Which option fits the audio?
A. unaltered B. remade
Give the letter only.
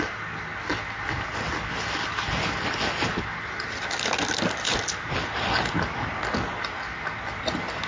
A